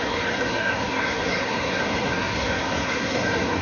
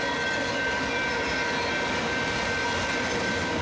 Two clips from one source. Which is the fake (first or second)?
first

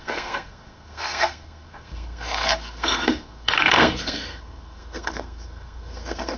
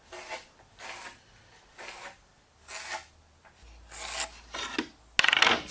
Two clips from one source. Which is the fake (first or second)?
first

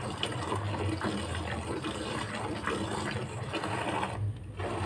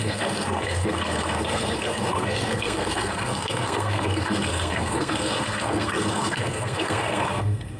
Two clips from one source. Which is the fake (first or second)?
second